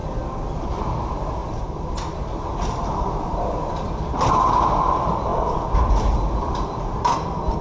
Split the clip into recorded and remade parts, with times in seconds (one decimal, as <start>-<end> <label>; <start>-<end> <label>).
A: 0.0-0.6 recorded; 0.6-1.4 remade; 1.4-4.4 recorded; 4.4-5.3 remade; 5.3-6.4 recorded; 6.4-7.6 remade